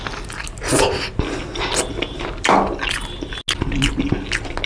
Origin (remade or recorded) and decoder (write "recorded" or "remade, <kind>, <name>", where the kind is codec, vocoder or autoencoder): recorded